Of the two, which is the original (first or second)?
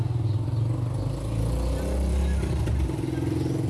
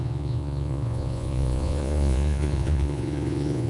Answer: first